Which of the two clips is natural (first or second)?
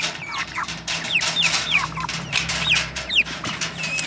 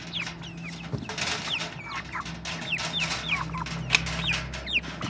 second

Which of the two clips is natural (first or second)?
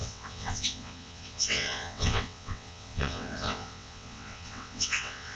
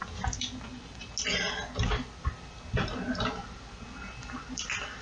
second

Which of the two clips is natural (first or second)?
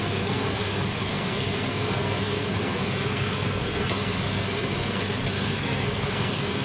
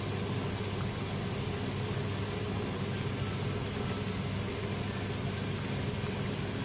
second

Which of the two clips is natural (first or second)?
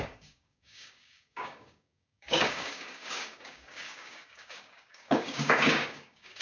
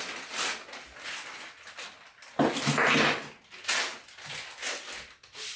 second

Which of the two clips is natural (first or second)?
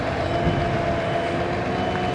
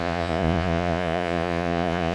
first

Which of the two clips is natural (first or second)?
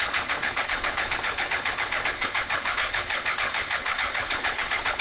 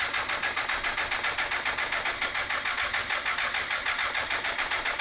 second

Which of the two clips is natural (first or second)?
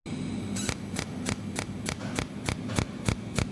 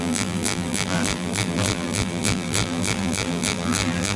first